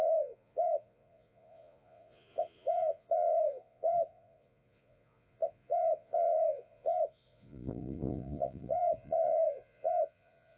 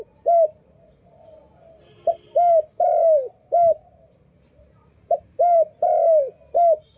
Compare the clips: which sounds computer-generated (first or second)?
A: first